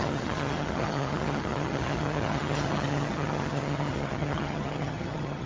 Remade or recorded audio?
remade